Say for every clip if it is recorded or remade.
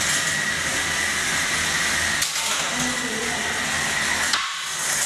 recorded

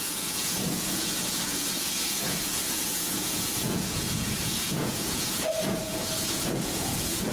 remade